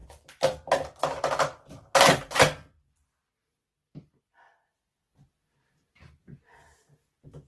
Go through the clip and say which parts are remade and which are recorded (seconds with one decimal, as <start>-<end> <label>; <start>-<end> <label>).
0.0-7.5 recorded